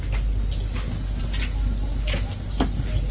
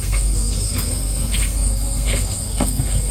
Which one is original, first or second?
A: first